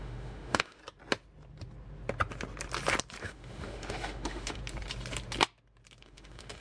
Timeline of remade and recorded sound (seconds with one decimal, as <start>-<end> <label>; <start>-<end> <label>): 0.0-0.8 remade; 0.8-3.2 recorded; 3.2-4.6 remade; 4.6-6.0 recorded; 6.0-6.6 remade